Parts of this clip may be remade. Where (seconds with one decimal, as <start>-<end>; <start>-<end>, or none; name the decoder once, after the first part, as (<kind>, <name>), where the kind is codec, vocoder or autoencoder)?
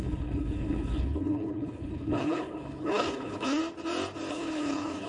0.0-3.6 (codec, HILCodec); 4.3-5.1